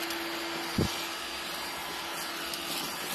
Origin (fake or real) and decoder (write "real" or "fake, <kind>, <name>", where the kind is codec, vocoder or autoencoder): real